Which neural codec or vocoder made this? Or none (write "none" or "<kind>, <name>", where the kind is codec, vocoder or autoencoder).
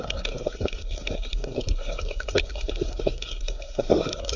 codec, SNAC